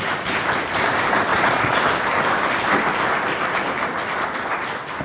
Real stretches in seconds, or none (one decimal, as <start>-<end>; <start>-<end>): 0.0-1.3; 1.8-5.0